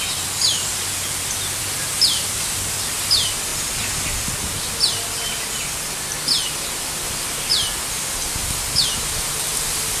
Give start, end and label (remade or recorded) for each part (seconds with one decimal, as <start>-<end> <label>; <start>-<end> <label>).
0.0-3.5 remade; 3.5-6.6 recorded; 6.6-10.0 remade